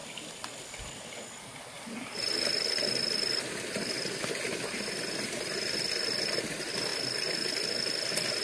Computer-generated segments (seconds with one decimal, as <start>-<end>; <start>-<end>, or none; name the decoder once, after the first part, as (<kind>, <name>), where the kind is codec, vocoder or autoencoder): none